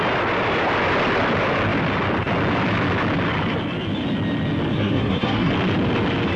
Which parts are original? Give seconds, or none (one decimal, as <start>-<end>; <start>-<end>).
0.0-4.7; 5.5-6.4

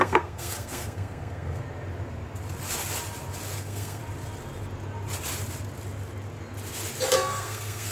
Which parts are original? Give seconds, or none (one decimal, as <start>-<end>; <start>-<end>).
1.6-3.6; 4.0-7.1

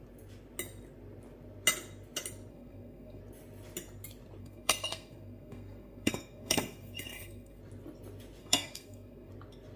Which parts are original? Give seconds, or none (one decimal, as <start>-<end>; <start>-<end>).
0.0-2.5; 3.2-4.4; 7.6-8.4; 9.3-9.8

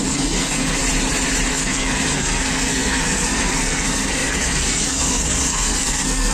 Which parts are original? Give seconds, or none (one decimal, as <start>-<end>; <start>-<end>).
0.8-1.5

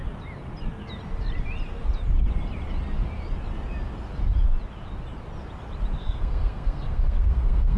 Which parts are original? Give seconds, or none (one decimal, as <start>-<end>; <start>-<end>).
0.0-6.0

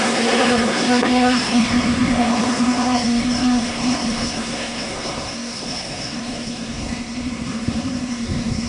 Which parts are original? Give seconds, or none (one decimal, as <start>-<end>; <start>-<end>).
none

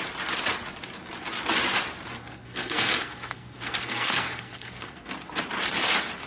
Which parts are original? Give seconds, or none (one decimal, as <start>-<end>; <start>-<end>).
0.0-2.2; 5.1-6.3

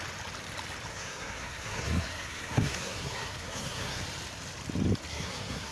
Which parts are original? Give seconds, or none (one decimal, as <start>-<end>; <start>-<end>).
0.0-0.9; 4.0-5.1